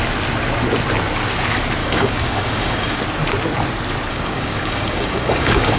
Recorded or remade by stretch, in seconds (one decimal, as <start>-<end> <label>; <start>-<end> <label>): 0.0-1.8 recorded; 1.8-3.0 remade; 3.0-4.1 recorded; 4.1-5.8 remade